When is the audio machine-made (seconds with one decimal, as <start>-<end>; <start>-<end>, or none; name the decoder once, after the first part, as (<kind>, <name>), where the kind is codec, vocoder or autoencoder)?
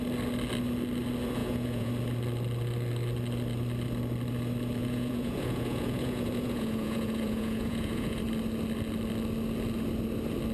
1.4-1.9 (vocoder, Vocos); 4.8-8.2